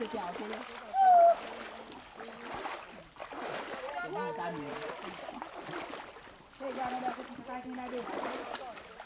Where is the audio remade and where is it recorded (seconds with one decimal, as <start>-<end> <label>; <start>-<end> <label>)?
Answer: 0.0-9.1 recorded